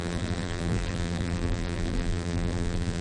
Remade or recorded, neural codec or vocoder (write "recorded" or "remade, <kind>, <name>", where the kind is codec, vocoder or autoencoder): remade, vocoder, BigVGAN v2